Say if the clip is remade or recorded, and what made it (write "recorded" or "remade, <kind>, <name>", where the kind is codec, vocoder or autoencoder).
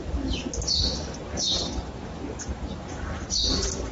recorded